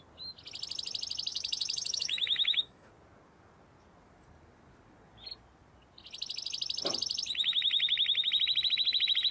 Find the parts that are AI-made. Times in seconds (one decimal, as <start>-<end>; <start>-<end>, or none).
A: 1.3-2.9